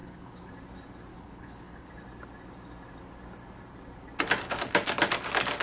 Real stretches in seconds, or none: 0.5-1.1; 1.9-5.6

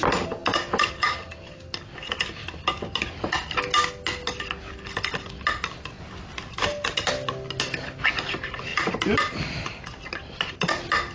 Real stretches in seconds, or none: 0.0-11.1

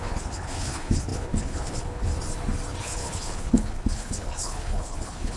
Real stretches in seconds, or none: 2.1-2.8